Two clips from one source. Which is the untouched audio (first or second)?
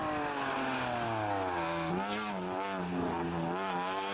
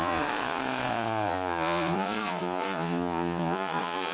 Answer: first